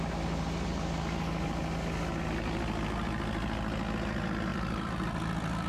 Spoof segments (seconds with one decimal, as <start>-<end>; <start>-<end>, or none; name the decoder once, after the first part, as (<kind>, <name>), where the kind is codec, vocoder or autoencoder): 4.5-5.7 (vocoder, BigVGAN v2)